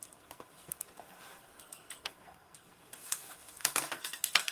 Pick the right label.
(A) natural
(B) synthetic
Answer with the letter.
B